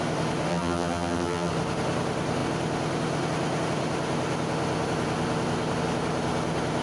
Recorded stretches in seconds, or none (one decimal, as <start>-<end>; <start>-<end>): 0.0-0.5; 1.5-6.8